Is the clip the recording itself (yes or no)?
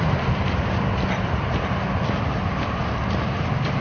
yes